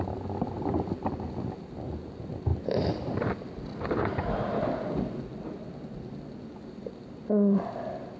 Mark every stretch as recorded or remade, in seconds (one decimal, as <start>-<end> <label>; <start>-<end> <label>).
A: 0.0-8.2 recorded